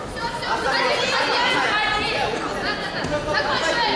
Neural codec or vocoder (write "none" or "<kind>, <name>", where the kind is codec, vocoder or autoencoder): none